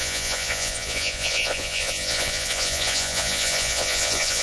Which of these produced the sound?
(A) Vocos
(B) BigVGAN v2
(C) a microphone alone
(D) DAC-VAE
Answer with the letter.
A